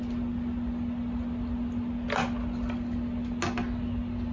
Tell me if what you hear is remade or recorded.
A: recorded